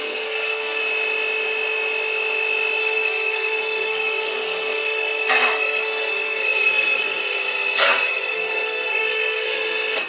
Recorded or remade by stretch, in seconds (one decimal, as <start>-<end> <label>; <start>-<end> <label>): 0.0-0.8 remade; 0.8-2.8 recorded; 2.8-10.1 remade